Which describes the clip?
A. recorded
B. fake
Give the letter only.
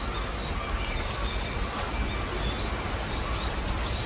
A